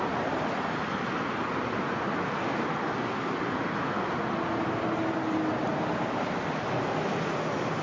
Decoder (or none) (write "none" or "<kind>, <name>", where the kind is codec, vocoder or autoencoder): none